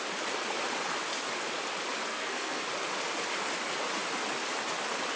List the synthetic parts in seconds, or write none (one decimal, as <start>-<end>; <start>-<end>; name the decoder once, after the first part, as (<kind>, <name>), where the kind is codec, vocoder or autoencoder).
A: 2.1-2.6 (codec, SNAC)